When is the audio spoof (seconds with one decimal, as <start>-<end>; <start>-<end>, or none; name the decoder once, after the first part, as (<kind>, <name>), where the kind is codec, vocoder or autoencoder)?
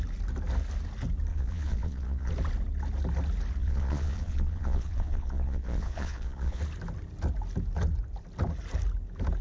1.3-2.3 (vocoder, Vocos); 3.6-6.6